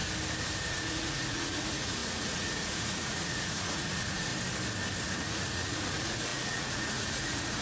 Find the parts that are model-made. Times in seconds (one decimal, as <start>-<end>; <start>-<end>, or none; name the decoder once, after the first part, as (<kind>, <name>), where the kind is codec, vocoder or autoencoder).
0.7-4.3 (vocoder, Vocos); 5.1-7.6